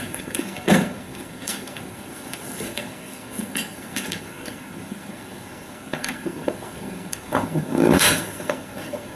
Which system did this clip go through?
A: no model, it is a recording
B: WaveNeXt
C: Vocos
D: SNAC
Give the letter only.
D